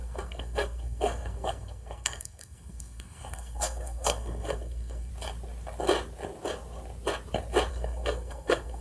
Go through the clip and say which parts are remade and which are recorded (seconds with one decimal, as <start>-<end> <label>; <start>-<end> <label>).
0.0-5.1 remade; 5.1-7.7 recorded; 7.7-8.8 remade